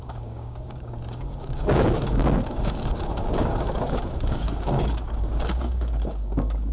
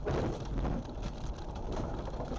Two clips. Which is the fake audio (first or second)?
first